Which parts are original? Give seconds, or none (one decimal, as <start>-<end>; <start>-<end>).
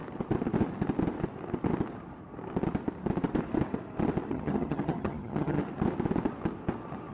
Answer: 0.0-4.3; 5.6-7.1